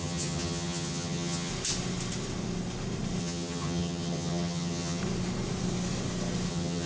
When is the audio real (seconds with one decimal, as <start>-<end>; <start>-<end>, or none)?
1.5-3.2; 5.0-6.5